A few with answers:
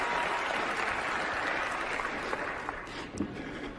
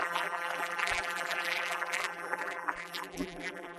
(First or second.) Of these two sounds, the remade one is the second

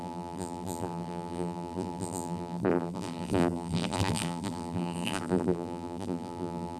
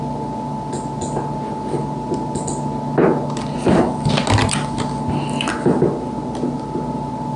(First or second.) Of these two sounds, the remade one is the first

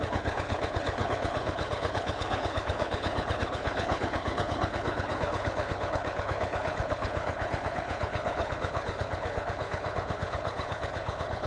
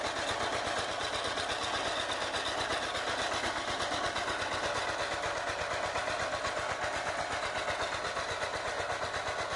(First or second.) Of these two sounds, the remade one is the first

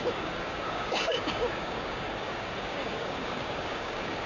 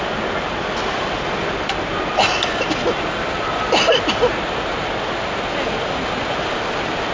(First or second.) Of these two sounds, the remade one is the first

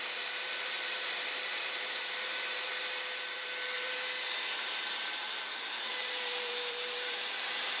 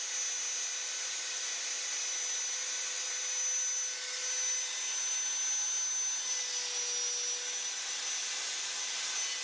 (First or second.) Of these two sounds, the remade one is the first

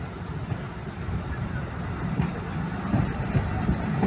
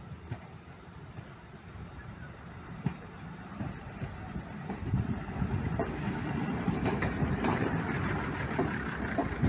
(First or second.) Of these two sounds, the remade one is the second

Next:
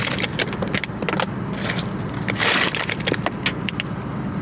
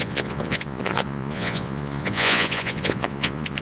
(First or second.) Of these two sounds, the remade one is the second